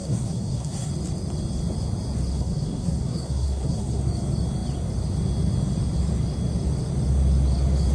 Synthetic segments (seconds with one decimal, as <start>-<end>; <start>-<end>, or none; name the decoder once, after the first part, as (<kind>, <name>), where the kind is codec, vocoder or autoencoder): 0.0-0.9 (codec, SNAC); 2.3-4.0